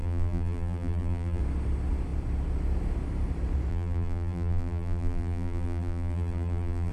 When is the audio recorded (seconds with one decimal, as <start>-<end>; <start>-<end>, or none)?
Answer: 1.4-3.7

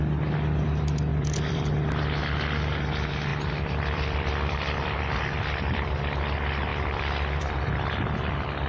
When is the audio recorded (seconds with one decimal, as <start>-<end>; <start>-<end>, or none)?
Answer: 0.0-1.1; 1.7-3.3; 5.2-6.7; 7.9-8.7

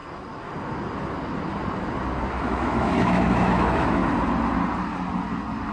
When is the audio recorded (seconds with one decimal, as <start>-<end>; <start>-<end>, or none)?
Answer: 0.0-2.3; 4.0-5.7

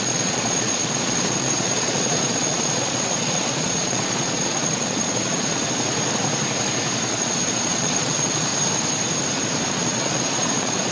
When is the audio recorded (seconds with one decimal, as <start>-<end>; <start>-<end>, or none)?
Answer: 5.6-7.1; 8.5-9.7

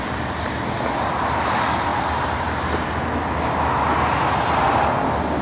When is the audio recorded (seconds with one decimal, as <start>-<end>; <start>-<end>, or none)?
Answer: 0.0-5.4

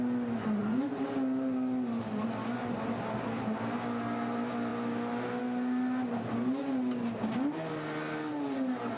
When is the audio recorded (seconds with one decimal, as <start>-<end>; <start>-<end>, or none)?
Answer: 0.0-9.0